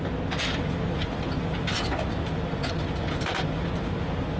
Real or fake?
real